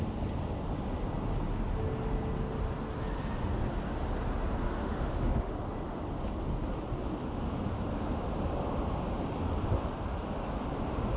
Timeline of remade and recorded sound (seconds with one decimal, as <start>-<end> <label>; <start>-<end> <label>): 0.0-4.8 recorded; 4.8-5.5 remade; 5.5-11.2 recorded